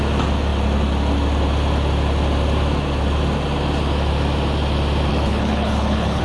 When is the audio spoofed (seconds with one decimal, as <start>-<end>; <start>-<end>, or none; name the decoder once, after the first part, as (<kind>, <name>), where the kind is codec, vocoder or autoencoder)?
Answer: 5.1-6.2 (codec, HILCodec)